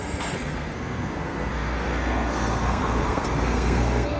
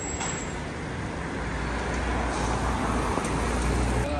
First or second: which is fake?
first